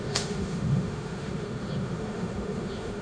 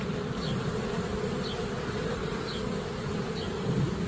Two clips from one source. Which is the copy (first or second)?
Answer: first